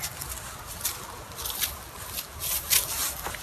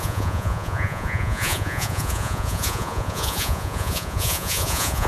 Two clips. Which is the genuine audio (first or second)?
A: first